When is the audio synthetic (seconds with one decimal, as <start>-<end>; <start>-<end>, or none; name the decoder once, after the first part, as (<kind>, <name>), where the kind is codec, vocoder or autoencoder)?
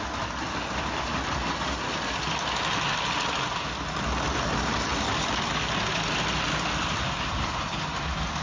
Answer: none